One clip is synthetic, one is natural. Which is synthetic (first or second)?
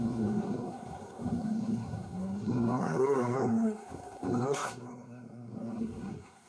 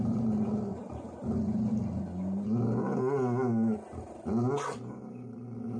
first